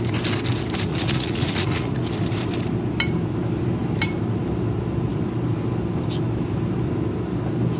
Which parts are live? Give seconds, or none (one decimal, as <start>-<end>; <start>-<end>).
0.0-0.9; 2.0-7.8